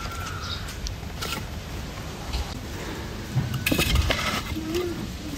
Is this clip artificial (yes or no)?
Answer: yes